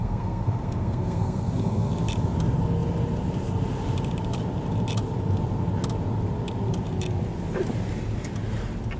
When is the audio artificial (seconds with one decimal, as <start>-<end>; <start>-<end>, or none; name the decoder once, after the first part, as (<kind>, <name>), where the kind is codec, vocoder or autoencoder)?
0.0-1.9 (codec, SNAC)